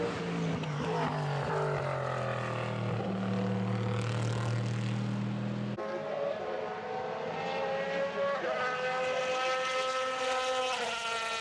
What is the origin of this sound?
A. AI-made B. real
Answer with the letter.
B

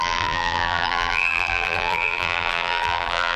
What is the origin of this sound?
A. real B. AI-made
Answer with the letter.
B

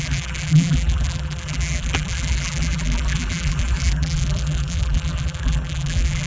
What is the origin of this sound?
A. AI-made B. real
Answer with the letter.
A